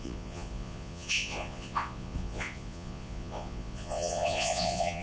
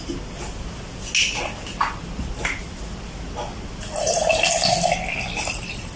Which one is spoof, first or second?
first